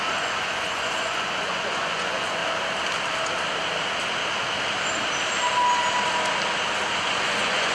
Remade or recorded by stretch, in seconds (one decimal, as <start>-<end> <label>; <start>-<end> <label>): 0.0-2.4 remade; 2.4-7.0 recorded; 7.0-7.7 remade